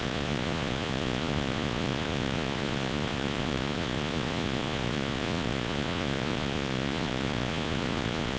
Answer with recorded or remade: remade